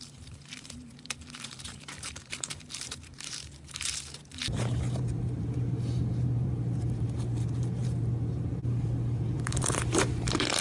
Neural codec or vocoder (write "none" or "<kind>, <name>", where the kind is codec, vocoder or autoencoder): vocoder, BigVGAN v2